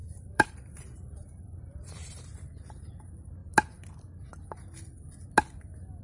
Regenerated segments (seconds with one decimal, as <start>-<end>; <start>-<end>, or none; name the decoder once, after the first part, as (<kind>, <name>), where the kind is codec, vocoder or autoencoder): 0.0-2.3 (vocoder, BigVGAN v2); 2.8-3.4